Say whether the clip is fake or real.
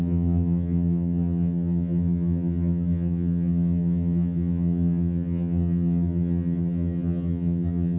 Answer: fake